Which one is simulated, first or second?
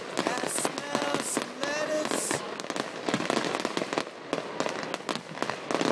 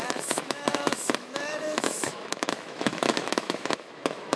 second